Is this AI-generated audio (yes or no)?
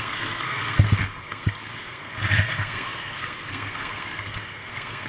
yes